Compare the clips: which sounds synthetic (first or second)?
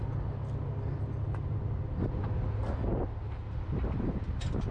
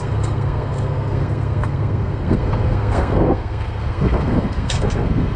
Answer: second